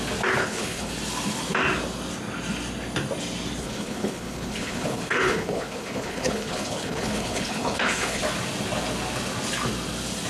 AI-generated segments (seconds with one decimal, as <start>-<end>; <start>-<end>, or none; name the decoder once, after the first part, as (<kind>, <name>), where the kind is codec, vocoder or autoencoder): 0.4-0.9 (codec, HILCodec); 3.6-8.2